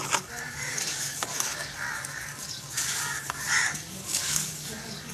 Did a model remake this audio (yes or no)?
yes